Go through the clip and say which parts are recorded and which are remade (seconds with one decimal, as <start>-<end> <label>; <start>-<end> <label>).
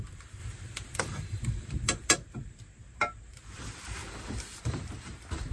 0.0-4.0 remade; 4.0-4.6 recorded; 4.6-5.5 remade